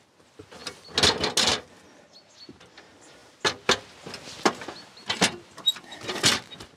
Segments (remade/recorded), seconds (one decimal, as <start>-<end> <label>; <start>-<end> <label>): 0.0-6.8 recorded